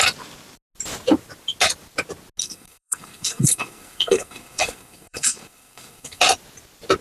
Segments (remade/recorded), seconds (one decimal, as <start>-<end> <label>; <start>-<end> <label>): 0.0-2.4 recorded; 2.4-6.2 remade; 6.2-7.0 recorded

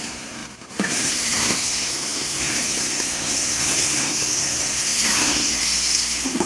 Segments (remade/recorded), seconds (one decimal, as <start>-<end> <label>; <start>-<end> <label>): 0.0-6.5 remade